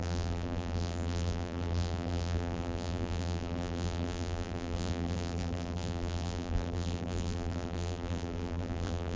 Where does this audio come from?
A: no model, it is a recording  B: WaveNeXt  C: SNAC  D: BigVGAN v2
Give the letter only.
D